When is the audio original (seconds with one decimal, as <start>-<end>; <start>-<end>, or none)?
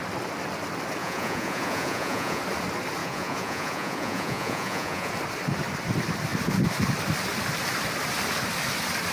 0.0-1.0; 2.4-3.0; 5.1-9.1